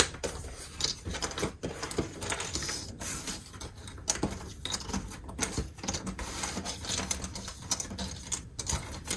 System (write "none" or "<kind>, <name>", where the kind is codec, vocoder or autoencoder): none